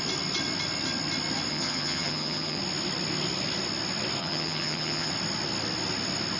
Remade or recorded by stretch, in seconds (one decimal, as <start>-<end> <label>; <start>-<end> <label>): 0.0-1.5 recorded; 1.5-2.6 remade; 2.6-4.2 recorded; 4.2-5.1 remade; 5.1-6.4 recorded